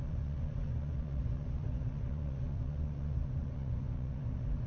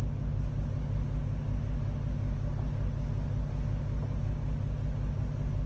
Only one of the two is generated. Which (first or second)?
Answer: first